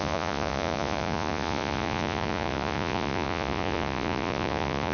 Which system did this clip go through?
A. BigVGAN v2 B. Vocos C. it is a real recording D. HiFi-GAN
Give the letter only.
B